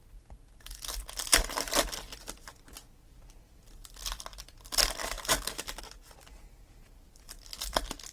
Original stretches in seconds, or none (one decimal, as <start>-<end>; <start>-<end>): 0.0-5.0; 5.8-8.1